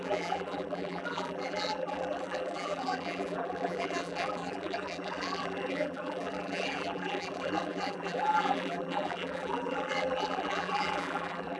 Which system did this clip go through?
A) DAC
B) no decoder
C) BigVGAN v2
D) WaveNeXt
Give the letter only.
C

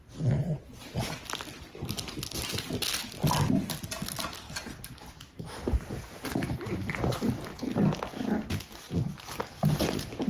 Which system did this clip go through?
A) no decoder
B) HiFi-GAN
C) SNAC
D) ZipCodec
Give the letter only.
A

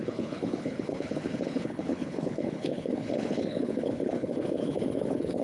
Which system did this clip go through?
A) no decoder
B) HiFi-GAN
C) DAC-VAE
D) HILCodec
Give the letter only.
D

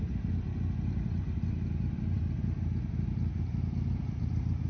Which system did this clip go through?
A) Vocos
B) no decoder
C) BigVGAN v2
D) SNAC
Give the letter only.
C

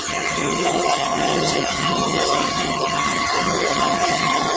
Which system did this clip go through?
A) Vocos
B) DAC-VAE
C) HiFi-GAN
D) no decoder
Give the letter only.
C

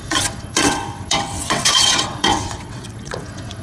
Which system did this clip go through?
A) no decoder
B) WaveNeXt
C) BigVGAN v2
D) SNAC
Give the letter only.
B